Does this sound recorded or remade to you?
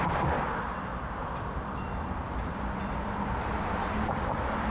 remade